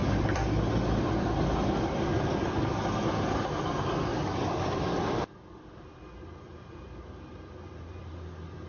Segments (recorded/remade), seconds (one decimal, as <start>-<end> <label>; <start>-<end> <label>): 0.0-2.6 remade; 2.6-4.1 recorded; 4.1-8.0 remade; 8.0-8.7 recorded